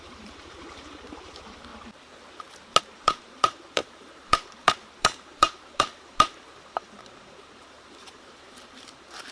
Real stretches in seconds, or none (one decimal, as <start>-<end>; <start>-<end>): 1.7-2.8